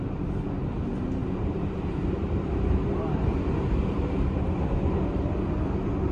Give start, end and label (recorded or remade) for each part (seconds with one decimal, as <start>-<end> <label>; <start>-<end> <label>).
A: 0.0-1.2 recorded; 1.2-4.9 remade; 4.9-6.1 recorded